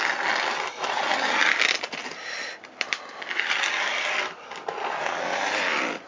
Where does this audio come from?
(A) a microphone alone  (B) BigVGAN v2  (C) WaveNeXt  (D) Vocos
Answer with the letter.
A